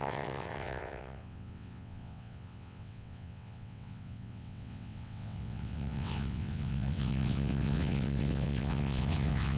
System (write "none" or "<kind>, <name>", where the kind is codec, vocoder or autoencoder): vocoder, WaveNeXt